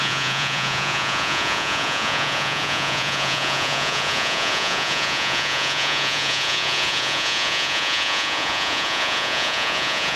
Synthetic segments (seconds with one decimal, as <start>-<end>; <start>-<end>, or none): 0.0-10.2